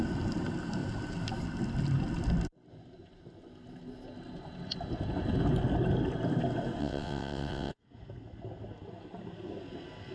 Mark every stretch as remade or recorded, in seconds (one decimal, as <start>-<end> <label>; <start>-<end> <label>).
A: 0.0-6.8 recorded; 6.8-7.7 remade; 7.7-10.1 recorded

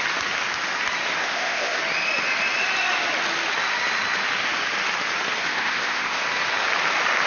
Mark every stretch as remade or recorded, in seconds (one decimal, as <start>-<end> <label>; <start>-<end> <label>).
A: 0.0-1.2 recorded; 1.2-1.8 remade; 1.8-5.5 recorded; 5.5-6.2 remade; 6.2-7.3 recorded

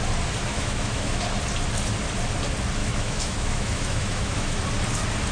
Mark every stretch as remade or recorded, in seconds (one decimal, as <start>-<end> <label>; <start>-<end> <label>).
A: 0.0-0.5 recorded; 0.5-1.2 remade; 1.2-2.8 recorded; 2.8-4.6 remade; 4.6-5.3 recorded

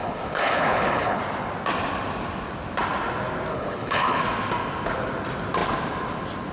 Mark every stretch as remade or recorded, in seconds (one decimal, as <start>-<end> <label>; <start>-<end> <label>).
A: 0.0-1.2 remade; 1.2-3.5 recorded; 3.5-4.2 remade; 4.2-6.5 recorded